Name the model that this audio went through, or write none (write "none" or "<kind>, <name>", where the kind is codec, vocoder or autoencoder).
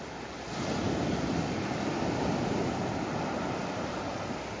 none